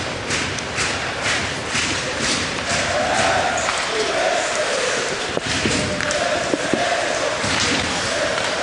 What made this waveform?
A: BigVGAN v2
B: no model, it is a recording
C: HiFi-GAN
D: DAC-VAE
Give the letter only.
A